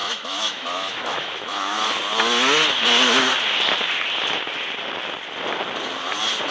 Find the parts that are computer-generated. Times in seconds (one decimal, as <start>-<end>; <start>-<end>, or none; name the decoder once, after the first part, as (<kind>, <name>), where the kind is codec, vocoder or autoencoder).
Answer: 0.0-1.8 (autoencoder, DAC-VAE)